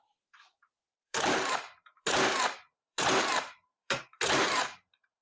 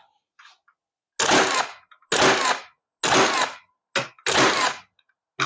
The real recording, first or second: second